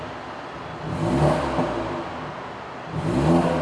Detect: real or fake real